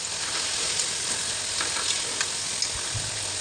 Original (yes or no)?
yes